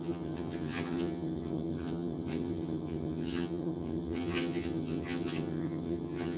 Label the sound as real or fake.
fake